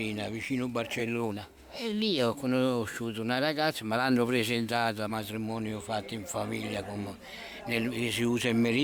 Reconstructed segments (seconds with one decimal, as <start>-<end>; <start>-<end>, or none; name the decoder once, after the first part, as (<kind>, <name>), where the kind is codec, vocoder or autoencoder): 1.0-5.1 (autoencoder, DAC-VAE)